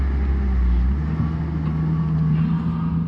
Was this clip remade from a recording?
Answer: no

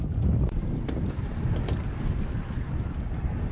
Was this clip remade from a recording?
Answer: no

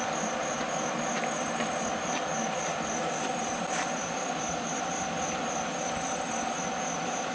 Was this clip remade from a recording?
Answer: no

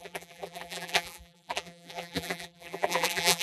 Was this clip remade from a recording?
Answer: yes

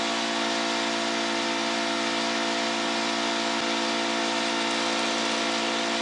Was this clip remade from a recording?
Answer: no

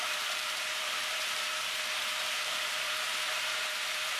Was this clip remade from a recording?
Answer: yes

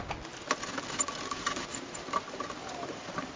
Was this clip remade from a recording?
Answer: no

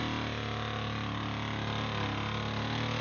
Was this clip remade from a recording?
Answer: no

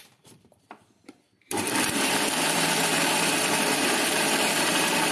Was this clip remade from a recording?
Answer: yes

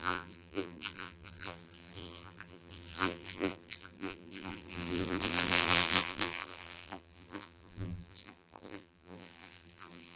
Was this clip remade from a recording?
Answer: yes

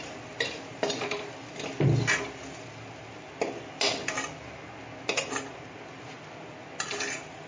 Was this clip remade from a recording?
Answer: no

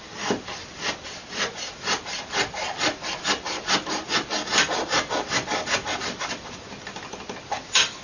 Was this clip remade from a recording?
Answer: yes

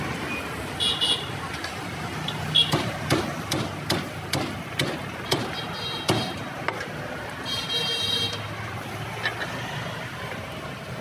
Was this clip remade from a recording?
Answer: no